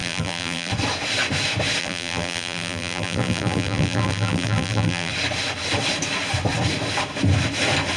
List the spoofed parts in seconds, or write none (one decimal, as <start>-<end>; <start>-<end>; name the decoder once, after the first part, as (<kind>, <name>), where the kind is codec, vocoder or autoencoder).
0.0-0.7 (vocoder, BigVGAN v2); 1.8-5.1